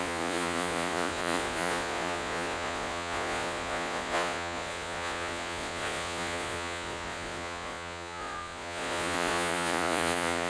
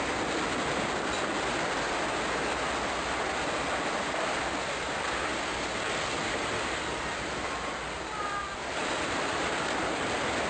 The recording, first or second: second